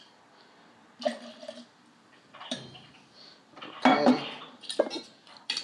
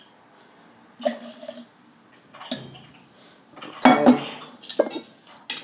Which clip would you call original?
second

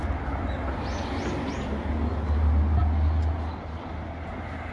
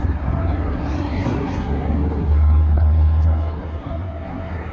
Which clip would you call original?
first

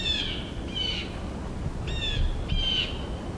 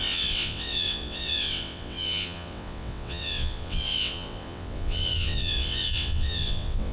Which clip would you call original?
first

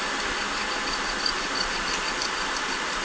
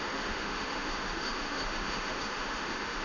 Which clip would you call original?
first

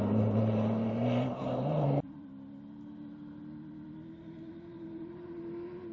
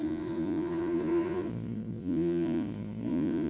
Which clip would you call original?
first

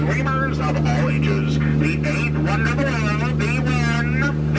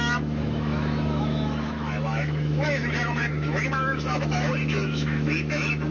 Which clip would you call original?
first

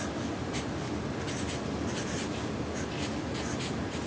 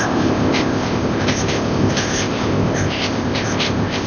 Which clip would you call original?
first